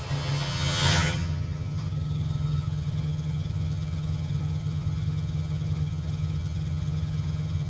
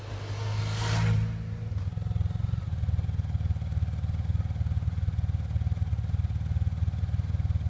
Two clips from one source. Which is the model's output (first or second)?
first